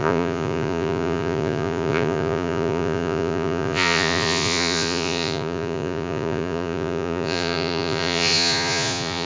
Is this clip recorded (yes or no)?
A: no